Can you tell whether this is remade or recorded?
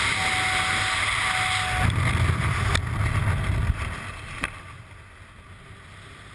recorded